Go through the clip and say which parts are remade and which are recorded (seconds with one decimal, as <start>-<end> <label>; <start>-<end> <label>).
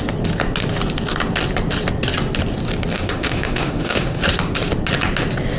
0.0-2.9 recorded; 2.9-4.2 remade; 4.2-5.6 recorded